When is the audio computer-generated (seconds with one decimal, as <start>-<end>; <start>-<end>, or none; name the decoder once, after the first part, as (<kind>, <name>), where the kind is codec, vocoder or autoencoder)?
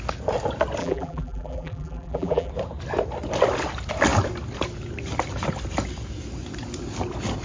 0.8-2.5 (vocoder, BigVGAN v2)